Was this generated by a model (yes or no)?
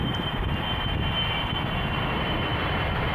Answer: no